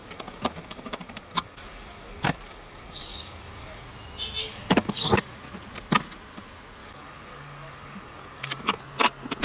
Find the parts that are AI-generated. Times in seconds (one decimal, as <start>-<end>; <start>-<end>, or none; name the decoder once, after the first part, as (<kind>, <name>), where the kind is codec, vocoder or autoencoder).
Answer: 0.0-3.8 (codec, DAC); 4.4-5.2; 6.8-8.8